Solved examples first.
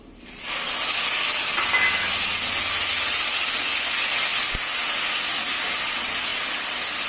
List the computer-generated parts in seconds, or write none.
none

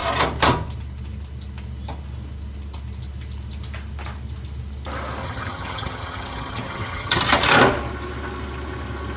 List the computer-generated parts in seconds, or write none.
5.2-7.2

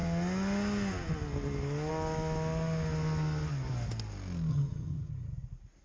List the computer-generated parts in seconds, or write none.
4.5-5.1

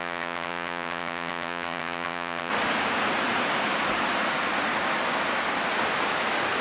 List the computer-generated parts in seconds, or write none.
0.0-2.5

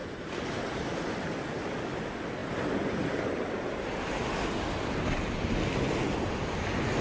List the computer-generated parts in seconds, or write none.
none